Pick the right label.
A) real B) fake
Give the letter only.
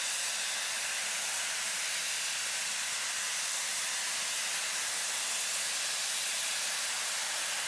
A